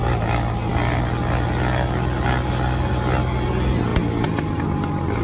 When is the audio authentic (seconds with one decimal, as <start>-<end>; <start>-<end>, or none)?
0.0-5.2